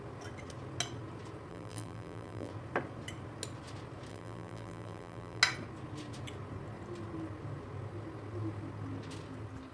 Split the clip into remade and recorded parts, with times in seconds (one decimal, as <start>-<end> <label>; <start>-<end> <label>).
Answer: 0.0-1.5 recorded; 1.5-2.5 remade; 2.5-4.1 recorded; 4.1-5.4 remade; 5.4-9.7 recorded